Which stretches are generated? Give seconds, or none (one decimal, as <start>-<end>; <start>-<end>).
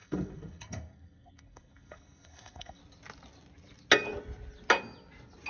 0.0-2.8